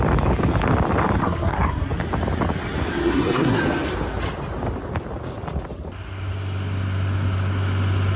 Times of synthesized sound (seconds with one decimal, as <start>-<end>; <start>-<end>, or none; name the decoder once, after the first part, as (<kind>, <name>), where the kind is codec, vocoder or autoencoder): 1.2-1.9 (codec, SNAC); 2.9-3.6